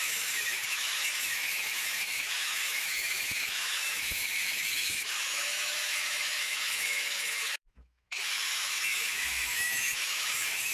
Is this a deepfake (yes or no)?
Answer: yes